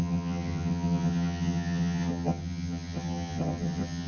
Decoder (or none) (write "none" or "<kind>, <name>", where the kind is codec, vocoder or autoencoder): vocoder, HiFi-GAN